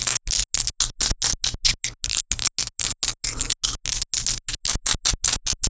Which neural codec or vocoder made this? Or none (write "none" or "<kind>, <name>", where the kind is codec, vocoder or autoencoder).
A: none